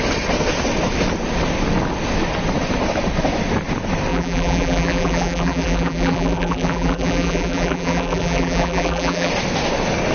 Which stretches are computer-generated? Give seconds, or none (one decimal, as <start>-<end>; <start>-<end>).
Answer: 4.1-9.3